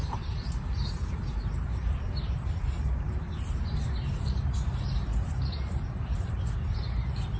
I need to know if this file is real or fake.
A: fake